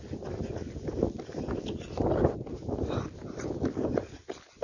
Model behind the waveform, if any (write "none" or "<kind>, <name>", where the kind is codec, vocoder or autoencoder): none